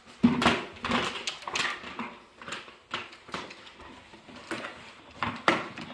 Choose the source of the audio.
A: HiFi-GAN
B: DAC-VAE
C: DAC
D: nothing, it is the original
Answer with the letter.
D